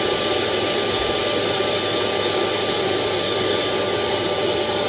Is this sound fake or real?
real